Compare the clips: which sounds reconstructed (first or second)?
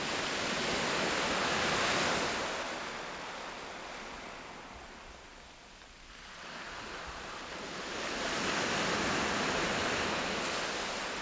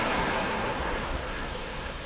second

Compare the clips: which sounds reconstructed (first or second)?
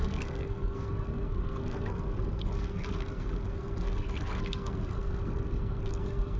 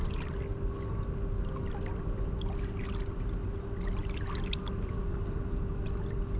first